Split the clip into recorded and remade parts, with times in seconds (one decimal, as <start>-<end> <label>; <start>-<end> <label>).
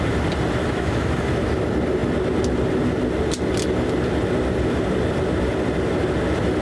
0.0-0.6 recorded; 0.6-1.3 remade; 1.3-6.6 recorded